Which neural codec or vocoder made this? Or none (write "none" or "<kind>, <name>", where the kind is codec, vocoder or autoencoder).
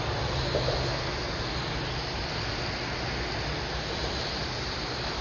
none